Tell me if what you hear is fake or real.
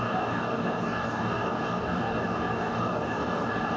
fake